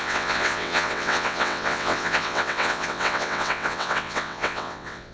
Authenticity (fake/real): fake